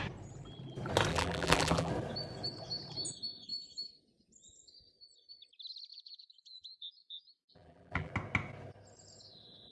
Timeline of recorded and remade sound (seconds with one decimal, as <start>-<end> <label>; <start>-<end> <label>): 0.0-1.1 recorded; 1.1-1.9 remade; 1.9-5.9 recorded; 5.9-8.1 remade; 8.1-9.7 recorded

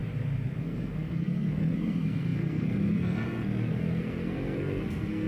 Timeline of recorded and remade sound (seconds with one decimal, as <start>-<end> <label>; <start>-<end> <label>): 0.0-0.6 recorded; 0.6-5.3 remade

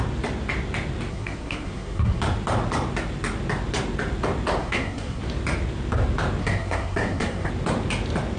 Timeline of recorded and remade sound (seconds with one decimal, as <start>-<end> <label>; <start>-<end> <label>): 0.0-1.1 recorded; 1.1-2.2 remade; 2.2-4.6 recorded; 4.6-5.2 remade; 5.2-6.4 recorded; 6.4-7.5 remade; 7.5-8.4 recorded

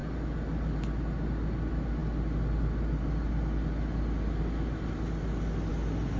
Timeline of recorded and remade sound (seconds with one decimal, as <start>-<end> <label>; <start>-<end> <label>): 0.0-6.2 recorded